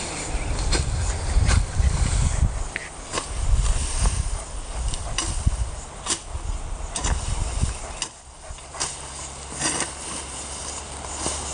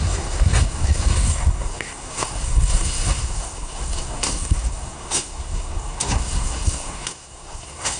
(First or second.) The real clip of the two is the first